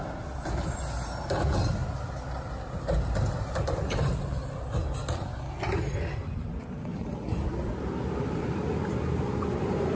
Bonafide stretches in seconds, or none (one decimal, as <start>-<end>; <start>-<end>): 0.0-6.9; 7.7-9.9